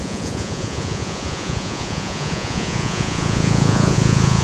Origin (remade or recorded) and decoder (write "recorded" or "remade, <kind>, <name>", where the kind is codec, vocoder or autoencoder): remade, vocoder, Vocos